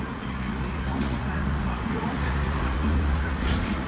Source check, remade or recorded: remade